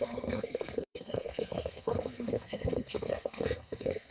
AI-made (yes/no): yes